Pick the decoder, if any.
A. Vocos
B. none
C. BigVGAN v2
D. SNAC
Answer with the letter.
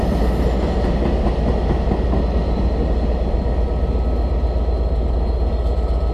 B